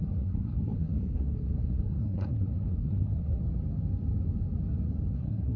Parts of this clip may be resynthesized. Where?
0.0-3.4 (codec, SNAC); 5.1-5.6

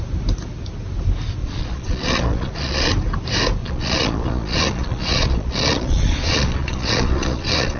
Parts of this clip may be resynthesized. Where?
1.4-2.9 (vocoder, Vocos); 3.6-7.8

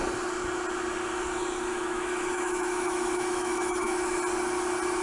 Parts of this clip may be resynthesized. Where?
1.7-4.2 (autoencoder, DAC-VAE)

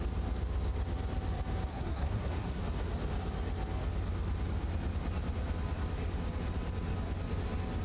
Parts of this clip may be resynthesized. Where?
1.7-2.6 (codec, SNAC)

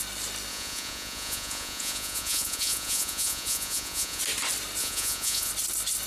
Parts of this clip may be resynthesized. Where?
0.5-4.2 (vocoder, Vocos); 4.8-5.5